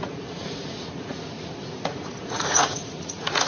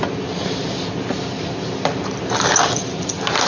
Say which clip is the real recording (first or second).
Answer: second